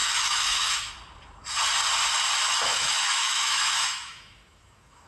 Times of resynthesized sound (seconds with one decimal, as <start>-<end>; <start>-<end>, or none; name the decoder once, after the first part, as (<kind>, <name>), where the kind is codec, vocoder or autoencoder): 0.0-0.9 (autoencoder, DAC-VAE); 2.7-5.1